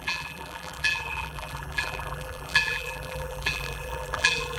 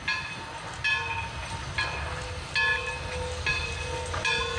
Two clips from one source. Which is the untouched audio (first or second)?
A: second